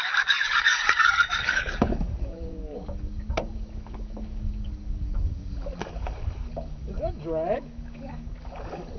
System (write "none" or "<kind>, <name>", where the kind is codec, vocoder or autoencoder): codec, DAC